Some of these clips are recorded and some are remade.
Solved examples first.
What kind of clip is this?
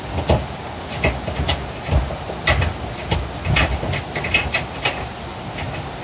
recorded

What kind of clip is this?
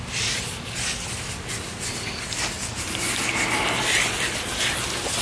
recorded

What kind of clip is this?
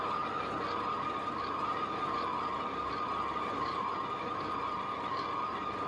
recorded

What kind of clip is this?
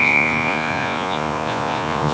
remade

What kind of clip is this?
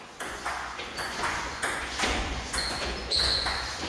remade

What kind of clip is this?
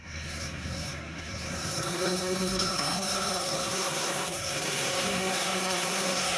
remade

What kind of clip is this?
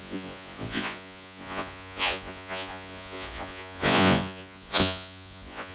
remade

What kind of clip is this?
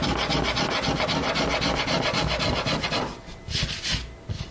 recorded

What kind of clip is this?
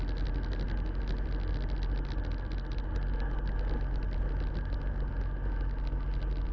recorded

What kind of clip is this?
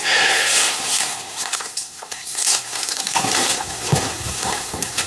remade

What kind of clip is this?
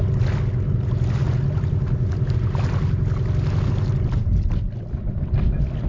recorded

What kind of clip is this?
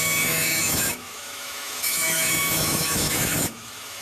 remade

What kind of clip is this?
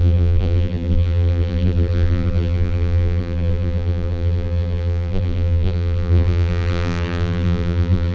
remade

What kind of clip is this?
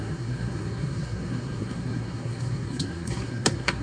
remade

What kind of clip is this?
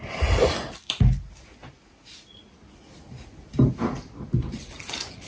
recorded